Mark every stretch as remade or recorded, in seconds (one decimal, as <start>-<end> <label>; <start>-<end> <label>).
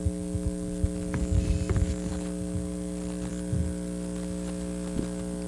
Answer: 0.0-5.5 recorded